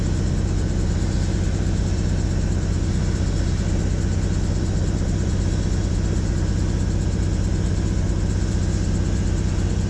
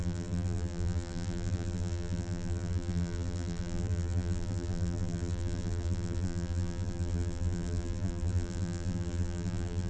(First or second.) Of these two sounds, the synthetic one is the second